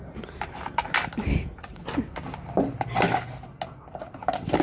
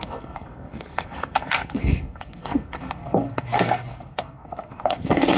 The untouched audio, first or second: first